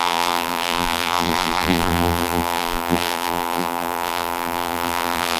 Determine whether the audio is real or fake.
fake